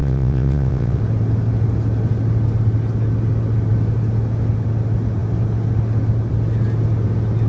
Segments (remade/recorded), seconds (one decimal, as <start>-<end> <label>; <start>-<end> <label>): 0.0-1.0 remade; 1.0-7.5 recorded